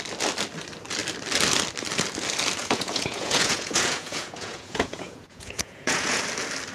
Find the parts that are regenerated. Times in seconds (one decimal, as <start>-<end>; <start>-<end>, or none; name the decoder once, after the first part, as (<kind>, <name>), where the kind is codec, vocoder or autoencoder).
2.6-6.2 (vocoder, Vocos)